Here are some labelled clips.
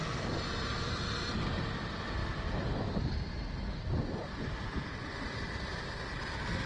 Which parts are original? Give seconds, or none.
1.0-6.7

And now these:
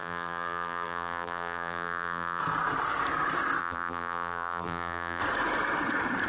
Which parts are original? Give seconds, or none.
2.4-3.6; 5.2-6.3

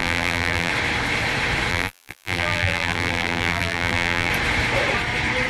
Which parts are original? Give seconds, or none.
0.7-1.7; 4.3-5.5

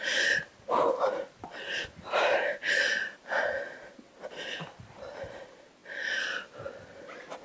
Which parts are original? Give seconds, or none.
0.0-7.4

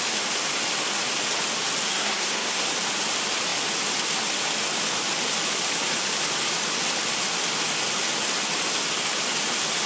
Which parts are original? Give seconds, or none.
0.0-1.9; 2.7-9.9

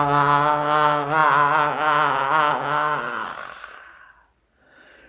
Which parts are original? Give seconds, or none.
0.0-5.1

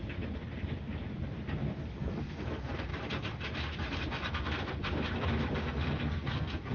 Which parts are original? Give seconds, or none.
0.0-2.0; 2.9-5.6

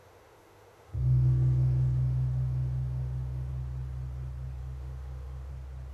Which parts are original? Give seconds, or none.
3.5-4.6; 5.5-5.9